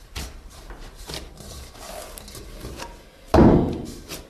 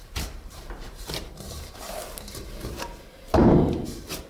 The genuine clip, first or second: first